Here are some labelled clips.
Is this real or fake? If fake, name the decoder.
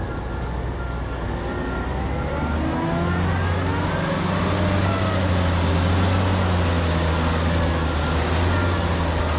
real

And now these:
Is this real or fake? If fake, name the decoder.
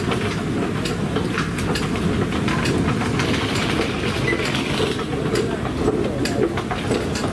real